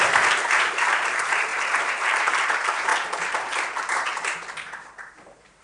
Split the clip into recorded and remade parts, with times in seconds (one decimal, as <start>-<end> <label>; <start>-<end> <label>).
0.0-2.9 remade; 2.9-3.8 recorded; 3.8-5.6 remade